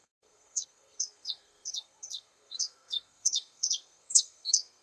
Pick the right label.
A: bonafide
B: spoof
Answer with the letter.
B